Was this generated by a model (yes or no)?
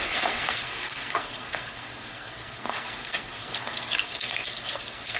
yes